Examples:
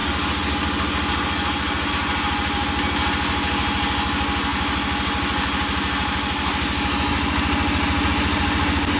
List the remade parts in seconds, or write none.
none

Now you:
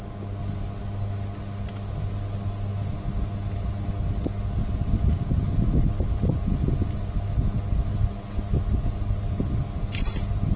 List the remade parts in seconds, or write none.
none

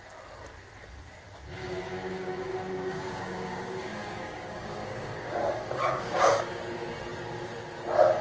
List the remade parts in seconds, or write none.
1.6-6.5